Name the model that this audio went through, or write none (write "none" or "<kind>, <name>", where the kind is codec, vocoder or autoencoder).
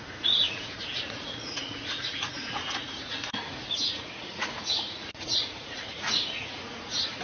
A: vocoder, Vocos